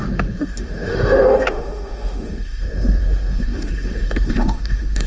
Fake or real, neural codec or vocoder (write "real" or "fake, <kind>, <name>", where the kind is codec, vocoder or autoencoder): fake, autoencoder, DAC-VAE